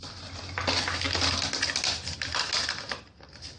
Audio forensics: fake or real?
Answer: real